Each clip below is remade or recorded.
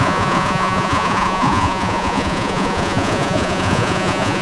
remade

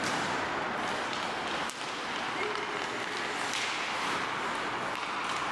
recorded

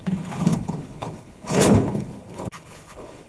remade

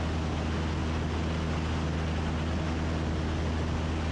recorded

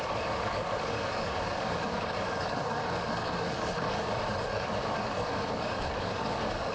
remade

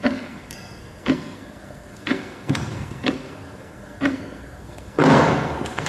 remade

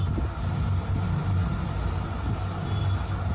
recorded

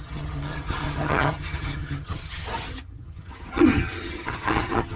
remade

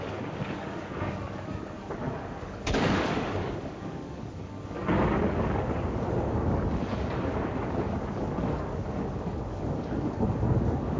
remade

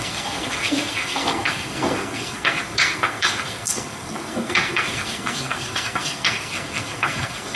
remade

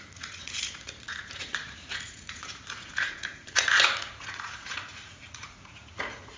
remade